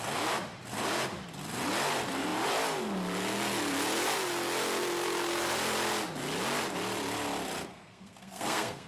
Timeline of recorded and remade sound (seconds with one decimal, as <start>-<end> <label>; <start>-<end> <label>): 0.0-7.7 recorded; 7.7-8.9 remade